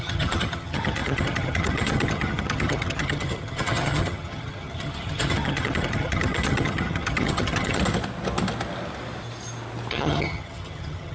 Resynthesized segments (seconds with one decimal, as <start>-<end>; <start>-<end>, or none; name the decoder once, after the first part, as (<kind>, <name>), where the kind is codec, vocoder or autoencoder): 0.0-7.8 (vocoder, HiFi-GAN); 9.9-11.1